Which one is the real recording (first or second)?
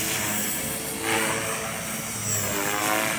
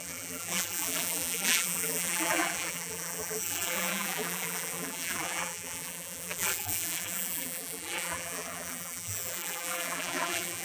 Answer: first